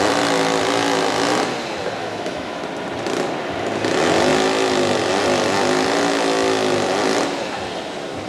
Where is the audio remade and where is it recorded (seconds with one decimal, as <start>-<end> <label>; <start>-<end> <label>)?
0.0-2.0 recorded; 2.0-2.6 remade; 2.6-8.3 recorded